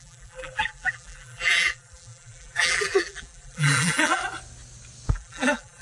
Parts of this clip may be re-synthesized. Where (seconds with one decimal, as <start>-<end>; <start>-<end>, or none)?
0.0-4.2; 5.1-5.8